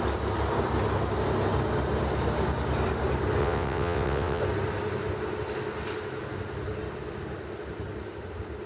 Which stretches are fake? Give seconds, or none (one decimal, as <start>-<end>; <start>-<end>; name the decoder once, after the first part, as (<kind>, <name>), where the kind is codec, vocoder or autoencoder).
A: 3.4-4.4 (vocoder, WaveNeXt)